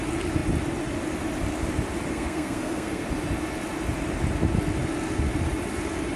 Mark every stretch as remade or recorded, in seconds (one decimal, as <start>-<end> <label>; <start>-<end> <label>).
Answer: 0.0-2.1 recorded; 2.1-3.0 remade; 3.0-6.2 recorded